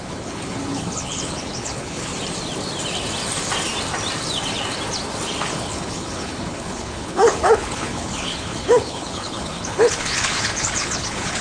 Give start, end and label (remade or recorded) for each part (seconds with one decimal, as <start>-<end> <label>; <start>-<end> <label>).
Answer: 0.0-2.1 remade; 2.1-5.4 recorded; 5.4-11.4 remade